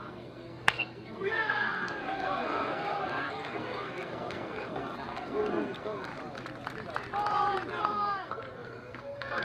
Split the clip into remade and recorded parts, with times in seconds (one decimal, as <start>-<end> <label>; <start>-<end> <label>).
0.0-6.1 remade; 6.1-7.8 recorded; 7.8-9.4 remade